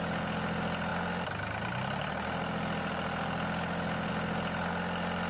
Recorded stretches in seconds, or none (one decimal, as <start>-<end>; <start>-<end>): 0.0-5.3